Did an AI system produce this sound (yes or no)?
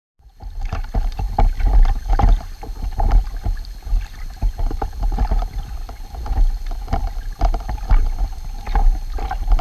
no